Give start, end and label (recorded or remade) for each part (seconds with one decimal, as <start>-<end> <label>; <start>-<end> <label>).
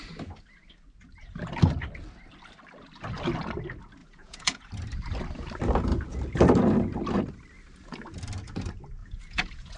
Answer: 0.0-4.0 recorded; 4.0-4.7 remade; 4.7-9.0 recorded; 9.0-9.8 remade